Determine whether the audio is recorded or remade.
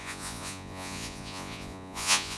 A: remade